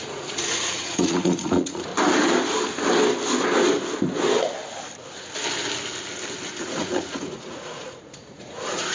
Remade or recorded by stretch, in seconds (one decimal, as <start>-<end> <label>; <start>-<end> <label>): 0.0-1.9 remade; 1.9-6.6 recorded; 6.6-8.9 remade